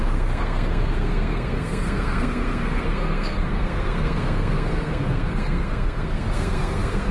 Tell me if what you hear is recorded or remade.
remade